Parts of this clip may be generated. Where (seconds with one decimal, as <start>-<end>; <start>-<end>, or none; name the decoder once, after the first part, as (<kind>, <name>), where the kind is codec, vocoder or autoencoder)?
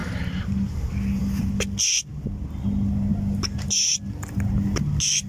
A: none